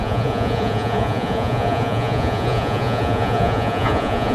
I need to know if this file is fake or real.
fake